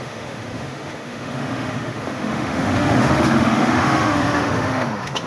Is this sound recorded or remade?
remade